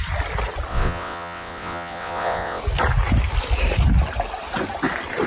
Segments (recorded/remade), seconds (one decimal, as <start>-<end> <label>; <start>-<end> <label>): 0.0-0.7 recorded; 0.7-2.6 remade; 2.6-5.3 recorded

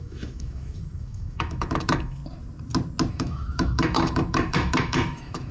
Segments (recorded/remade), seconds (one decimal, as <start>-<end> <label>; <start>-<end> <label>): 0.0-2.2 remade; 2.2-3.1 recorded; 3.1-5.5 remade

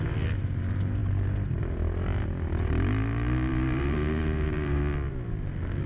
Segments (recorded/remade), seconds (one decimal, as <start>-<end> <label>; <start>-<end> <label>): 0.0-3.5 recorded; 3.5-4.8 remade; 4.8-5.9 recorded

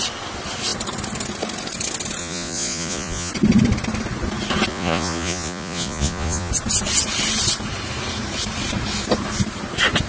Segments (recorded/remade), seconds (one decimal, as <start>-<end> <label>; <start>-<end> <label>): 0.0-2.2 recorded; 2.2-3.3 remade; 3.3-4.7 recorded; 4.7-6.5 remade; 6.5-10.1 recorded

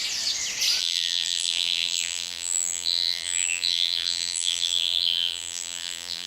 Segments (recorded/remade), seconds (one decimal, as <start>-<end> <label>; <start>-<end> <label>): 0.0-0.8 recorded; 0.8-6.3 remade

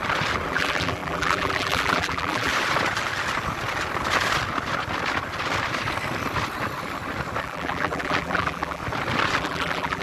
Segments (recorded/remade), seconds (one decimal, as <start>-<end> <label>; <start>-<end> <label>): 0.0-0.5 recorded; 0.5-2.5 remade; 2.5-7.4 recorded; 7.4-8.8 remade; 8.8-9.4 recorded; 9.4-10.0 remade